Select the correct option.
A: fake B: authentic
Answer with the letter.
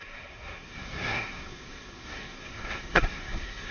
A